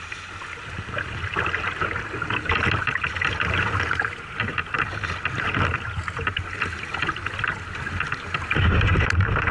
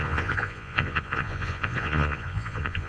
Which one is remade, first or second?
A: second